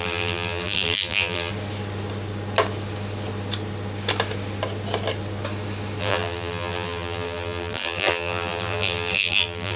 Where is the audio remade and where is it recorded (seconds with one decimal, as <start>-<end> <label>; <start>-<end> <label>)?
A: 0.0-1.5 remade; 1.5-6.0 recorded; 6.0-9.8 remade